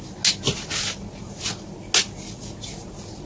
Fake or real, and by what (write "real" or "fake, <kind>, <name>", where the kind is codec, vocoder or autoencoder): real